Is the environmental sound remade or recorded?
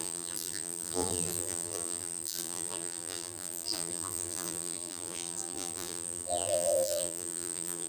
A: remade